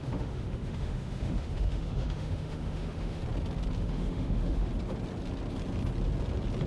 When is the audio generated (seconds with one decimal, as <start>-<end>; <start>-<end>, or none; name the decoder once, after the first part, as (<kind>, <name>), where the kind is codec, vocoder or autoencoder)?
0.0-3.2 (autoencoder, DAC-VAE); 3.8-4.7